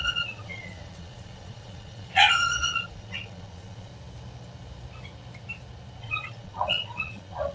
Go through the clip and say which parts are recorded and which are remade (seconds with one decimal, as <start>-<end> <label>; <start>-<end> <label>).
0.0-3.9 remade; 3.9-6.0 recorded; 6.0-7.5 remade

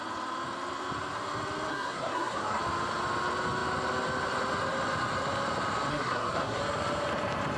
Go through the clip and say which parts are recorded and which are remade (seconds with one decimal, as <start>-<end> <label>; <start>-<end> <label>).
0.0-1.7 recorded; 1.7-2.6 remade; 2.6-5.9 recorded; 5.9-6.6 remade; 6.6-7.6 recorded

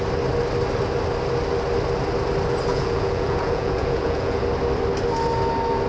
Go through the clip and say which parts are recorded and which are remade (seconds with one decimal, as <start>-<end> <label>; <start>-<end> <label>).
0.0-2.7 recorded; 2.7-4.4 remade; 4.4-5.9 recorded

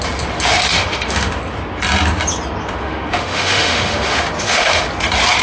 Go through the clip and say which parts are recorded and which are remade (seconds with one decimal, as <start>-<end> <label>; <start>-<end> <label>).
0.0-0.7 recorded; 0.7-1.3 remade; 1.3-2.8 recorded; 2.8-4.8 remade; 4.8-5.4 recorded

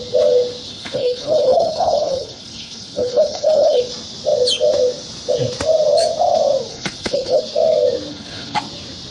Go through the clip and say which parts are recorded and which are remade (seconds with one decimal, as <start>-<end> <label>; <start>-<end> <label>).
0.0-0.7 recorded; 0.7-3.8 remade; 3.8-6.7 recorded; 6.7-7.4 remade; 7.4-8.1 recorded; 8.1-8.6 remade; 8.6-9.1 recorded

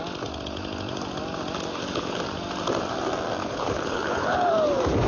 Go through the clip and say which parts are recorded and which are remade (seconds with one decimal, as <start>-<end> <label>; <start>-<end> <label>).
0.0-1.7 recorded; 1.7-2.2 remade; 2.2-3.4 recorded; 3.4-4.5 remade; 4.5-5.1 recorded

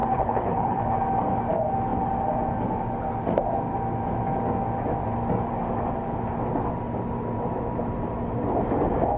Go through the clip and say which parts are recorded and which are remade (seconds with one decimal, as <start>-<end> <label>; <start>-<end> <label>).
0.0-0.8 remade; 0.8-9.2 recorded